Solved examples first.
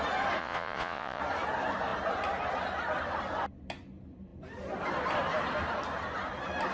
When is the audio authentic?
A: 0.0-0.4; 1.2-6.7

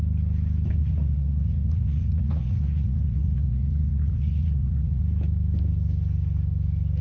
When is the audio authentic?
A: 0.0-0.8; 5.0-7.0

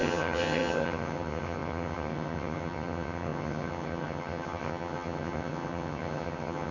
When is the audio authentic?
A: none